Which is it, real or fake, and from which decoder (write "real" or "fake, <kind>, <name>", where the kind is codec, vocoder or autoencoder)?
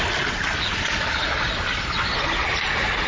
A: real